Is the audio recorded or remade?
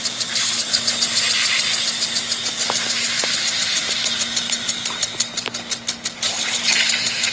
recorded